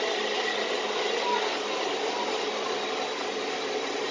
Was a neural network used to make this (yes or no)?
no